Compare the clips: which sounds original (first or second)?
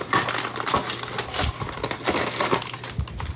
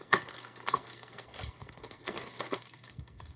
first